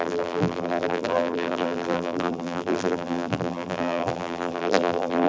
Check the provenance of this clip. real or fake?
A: fake